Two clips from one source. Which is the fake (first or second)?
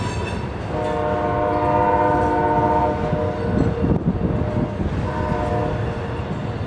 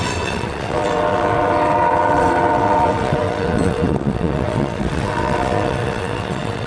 second